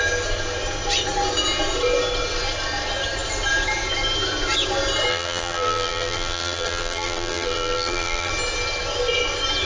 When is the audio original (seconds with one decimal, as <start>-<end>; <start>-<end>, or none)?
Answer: 0.0-5.1; 8.3-9.6